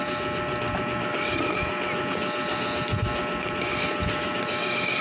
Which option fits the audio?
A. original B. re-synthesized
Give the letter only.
A